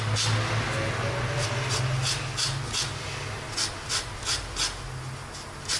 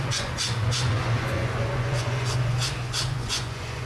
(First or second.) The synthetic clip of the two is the second